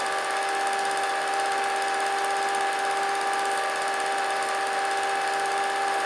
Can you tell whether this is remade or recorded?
recorded